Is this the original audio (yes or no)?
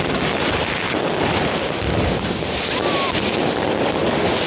yes